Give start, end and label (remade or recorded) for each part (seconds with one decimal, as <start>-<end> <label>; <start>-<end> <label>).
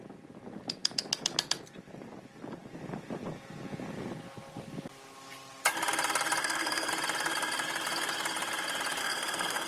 0.0-6.4 recorded; 6.4-6.9 remade; 6.9-9.0 recorded; 9.0-9.7 remade